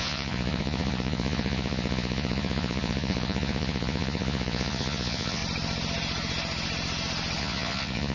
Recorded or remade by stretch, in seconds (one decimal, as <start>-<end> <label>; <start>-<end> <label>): 0.0-5.4 remade; 5.4-7.4 recorded; 7.4-8.1 remade